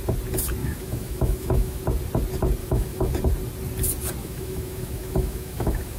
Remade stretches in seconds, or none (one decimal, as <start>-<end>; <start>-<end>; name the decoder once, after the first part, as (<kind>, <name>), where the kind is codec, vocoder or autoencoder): 0.6-1.8 (autoencoder, DAC-VAE); 2.6-3.1; 4.2-6.0

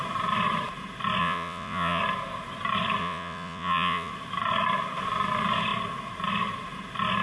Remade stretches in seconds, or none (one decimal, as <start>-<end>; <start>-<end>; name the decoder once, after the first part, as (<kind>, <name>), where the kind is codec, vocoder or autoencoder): 1.2-2.0 (vocoder, Vocos); 3.0-4.1

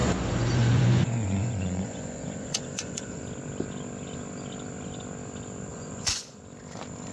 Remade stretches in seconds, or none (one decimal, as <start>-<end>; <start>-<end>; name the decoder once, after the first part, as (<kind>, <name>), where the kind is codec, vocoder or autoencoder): 0.0-3.2 (vocoder, Vocos); 5.7-6.4

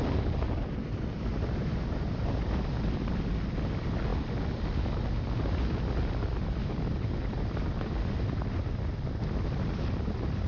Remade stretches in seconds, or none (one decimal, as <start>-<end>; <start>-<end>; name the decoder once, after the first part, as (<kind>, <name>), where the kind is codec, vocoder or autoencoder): none